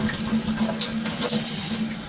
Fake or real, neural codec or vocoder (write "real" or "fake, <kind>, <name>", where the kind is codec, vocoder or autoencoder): real